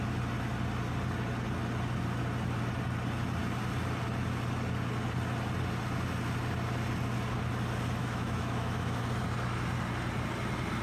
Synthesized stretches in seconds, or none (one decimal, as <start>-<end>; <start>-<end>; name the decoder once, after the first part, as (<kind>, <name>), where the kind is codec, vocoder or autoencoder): 8.0-9.0 (autoencoder, DAC-VAE)

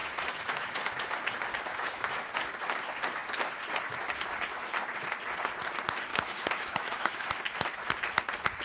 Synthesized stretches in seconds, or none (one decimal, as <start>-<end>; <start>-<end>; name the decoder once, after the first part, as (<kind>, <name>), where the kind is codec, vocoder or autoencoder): 0.0-0.9 (autoencoder, DAC-VAE); 1.7-2.3; 6.1-7.3

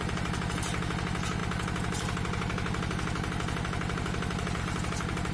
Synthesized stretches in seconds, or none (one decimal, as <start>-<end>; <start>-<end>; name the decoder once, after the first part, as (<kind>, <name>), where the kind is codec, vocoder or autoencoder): none

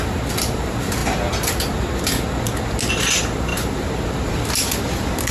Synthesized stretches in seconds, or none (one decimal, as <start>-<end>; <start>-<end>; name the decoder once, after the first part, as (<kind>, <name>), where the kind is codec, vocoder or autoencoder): 3.5-4.3 (vocoder, BigVGAN v2)

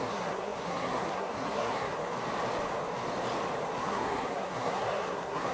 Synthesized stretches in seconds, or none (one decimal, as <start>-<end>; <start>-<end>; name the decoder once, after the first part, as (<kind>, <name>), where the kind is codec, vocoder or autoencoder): 0.0-2.0 (codec, SNAC); 3.8-5.5

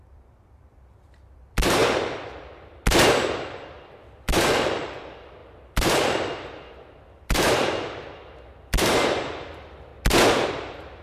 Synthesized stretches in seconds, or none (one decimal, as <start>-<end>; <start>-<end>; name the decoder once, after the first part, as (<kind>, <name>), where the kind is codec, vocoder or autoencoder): 0.0-1.8 (vocoder, BigVGAN v2); 4.0-9.9; 10.5-11.0